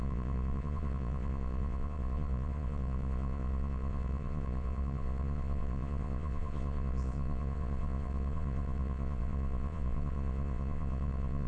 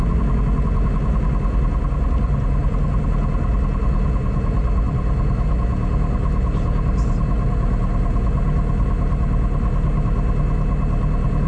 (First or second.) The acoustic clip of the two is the second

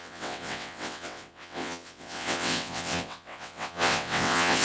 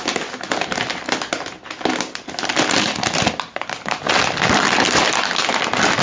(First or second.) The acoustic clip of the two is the second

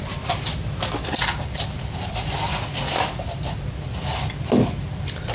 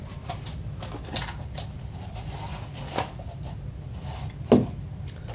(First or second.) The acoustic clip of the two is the second